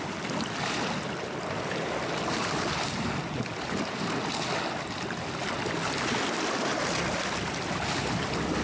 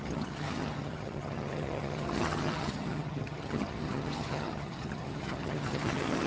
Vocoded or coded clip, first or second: second